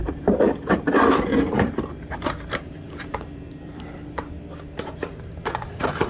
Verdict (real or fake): fake